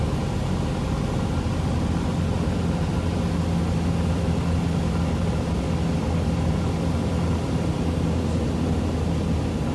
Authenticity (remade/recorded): recorded